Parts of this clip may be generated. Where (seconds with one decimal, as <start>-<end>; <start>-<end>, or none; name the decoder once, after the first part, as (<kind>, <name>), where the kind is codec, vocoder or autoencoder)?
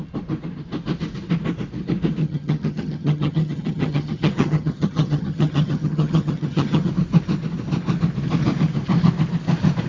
2.2-6.9 (vocoder, HiFi-GAN)